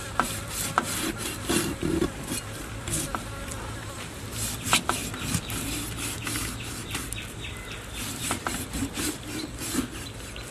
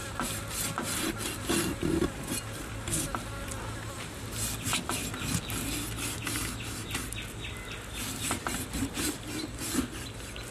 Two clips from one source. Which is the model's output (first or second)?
first